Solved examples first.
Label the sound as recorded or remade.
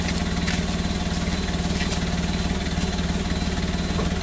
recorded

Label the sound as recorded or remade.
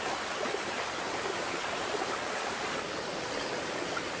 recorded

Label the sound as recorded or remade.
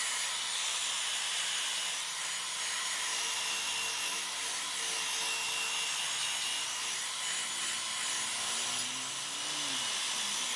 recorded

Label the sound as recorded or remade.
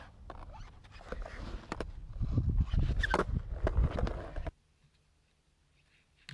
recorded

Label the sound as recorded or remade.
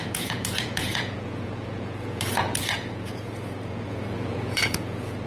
remade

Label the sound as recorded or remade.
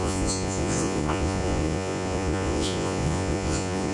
remade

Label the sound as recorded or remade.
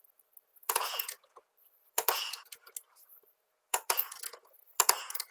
remade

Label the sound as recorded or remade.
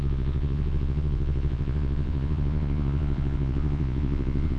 remade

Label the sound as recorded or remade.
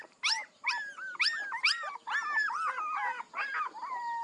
recorded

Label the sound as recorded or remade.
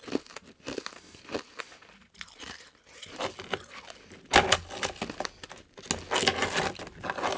recorded